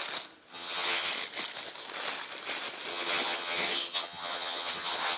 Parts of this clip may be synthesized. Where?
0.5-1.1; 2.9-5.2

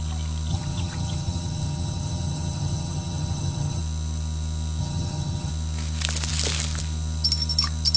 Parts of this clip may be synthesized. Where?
0.5-3.8; 4.8-5.5

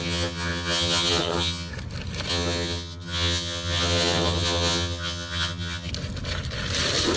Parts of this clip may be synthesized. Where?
0.0-1.7; 2.3-5.9

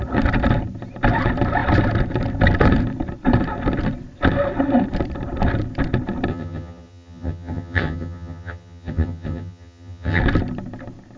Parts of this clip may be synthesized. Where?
6.3-10.2

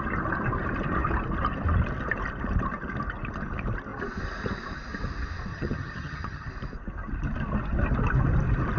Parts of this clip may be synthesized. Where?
5.5-6.5

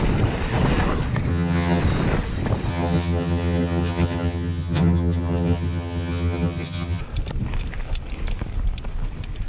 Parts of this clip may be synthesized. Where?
1.3-1.8; 2.7-7.0

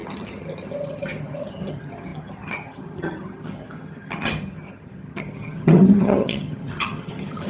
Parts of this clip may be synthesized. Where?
0.0-7.5